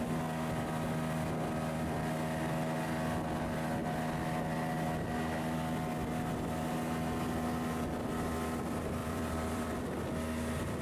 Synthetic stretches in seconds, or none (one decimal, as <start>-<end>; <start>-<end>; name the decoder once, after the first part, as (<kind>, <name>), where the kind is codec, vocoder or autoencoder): 9.0-9.8 (vocoder, BigVGAN v2)